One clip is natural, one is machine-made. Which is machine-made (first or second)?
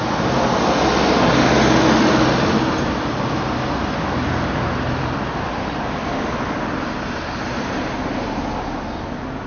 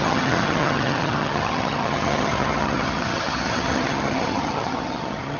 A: second